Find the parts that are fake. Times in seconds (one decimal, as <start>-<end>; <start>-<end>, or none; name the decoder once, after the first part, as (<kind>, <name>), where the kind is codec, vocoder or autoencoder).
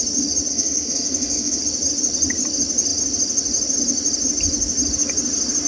0.5-1.6 (codec, SNAC)